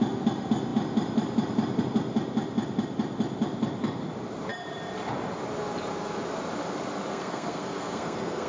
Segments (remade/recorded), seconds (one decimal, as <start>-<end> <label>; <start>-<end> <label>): 0.0-7.1 recorded; 7.1-8.5 remade